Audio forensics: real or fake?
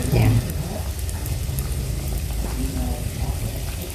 real